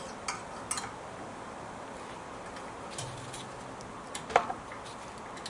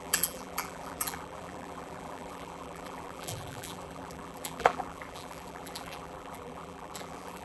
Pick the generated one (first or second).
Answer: second